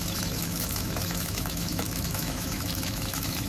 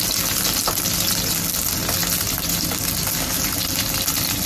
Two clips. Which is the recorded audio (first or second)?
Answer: second